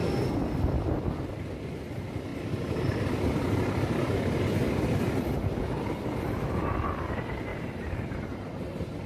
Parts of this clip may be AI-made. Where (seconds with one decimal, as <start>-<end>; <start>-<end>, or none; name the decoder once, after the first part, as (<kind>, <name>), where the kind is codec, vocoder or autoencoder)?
7.5-8.4 (vocoder, BigVGAN v2)